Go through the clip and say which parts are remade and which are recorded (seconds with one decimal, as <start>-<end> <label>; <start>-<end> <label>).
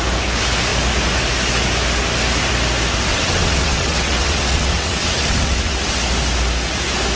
0.0-3.1 recorded; 3.1-5.9 remade; 5.9-7.2 recorded